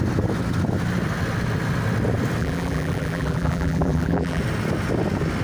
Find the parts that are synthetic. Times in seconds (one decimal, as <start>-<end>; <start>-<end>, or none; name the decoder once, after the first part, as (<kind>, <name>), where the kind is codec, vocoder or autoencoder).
2.4-4.4 (vocoder, BigVGAN v2)